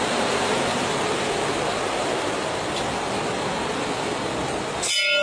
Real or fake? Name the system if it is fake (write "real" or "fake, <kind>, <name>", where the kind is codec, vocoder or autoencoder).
real